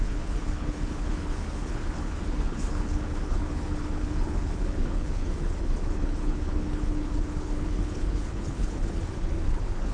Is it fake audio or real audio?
fake